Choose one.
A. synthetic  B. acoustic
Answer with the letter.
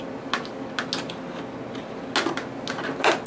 B